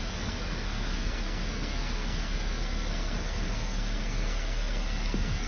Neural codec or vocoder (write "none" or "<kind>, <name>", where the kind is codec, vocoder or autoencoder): codec, SNAC